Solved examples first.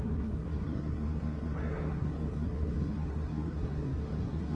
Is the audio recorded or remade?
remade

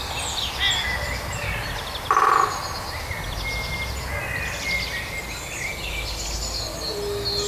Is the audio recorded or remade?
recorded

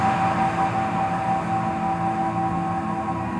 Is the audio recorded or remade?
recorded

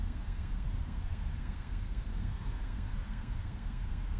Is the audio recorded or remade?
remade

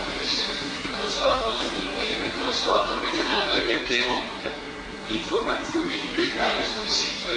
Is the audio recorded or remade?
remade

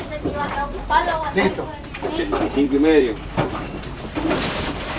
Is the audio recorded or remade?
remade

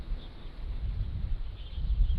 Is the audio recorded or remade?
remade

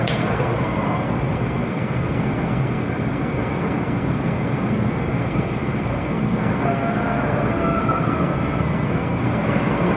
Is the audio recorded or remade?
remade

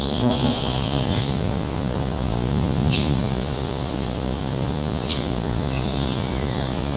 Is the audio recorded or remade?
remade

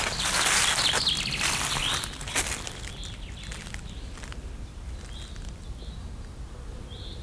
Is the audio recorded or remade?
recorded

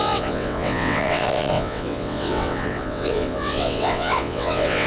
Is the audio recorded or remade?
remade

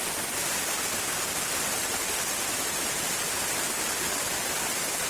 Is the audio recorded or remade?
recorded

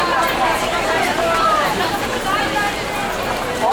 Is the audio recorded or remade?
remade